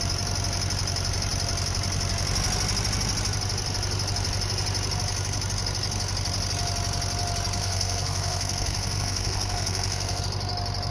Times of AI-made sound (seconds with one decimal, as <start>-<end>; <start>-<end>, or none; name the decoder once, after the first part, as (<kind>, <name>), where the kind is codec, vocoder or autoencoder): 7.6-10.2 (codec, SNAC)